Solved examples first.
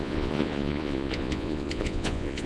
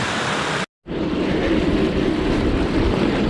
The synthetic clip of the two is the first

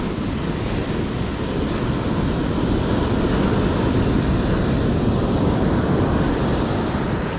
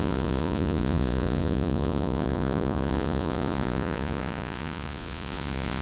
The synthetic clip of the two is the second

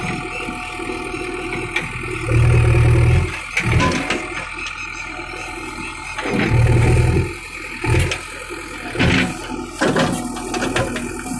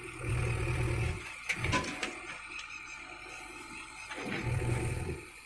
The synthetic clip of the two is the second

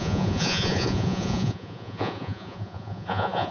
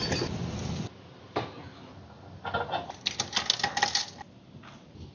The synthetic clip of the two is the first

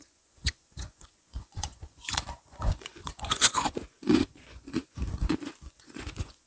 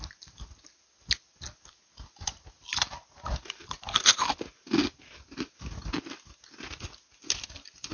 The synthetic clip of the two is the first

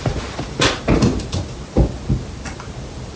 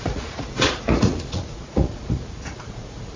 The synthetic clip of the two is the second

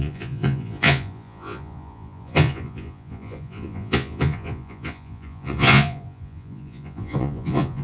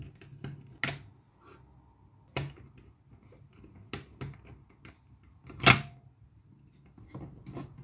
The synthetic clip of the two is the first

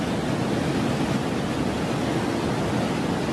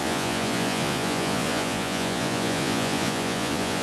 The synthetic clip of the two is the second